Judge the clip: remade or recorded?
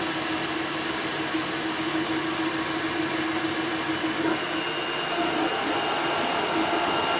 recorded